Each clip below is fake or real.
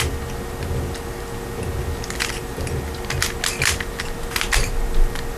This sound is real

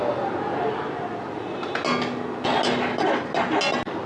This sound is real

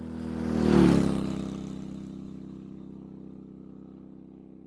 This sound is real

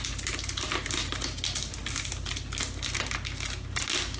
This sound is real